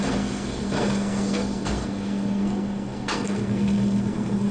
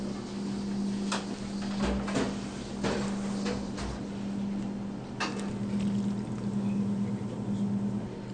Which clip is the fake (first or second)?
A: first